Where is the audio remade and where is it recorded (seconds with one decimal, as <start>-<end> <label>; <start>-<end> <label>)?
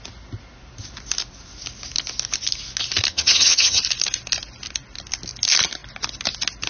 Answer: 0.0-3.1 recorded; 3.1-3.8 remade; 3.8-6.7 recorded